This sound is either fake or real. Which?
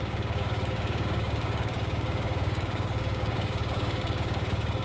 fake